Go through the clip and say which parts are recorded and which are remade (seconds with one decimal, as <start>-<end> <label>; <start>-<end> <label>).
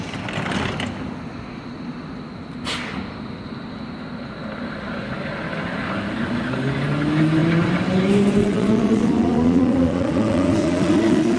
0.0-8.4 recorded; 8.4-11.4 remade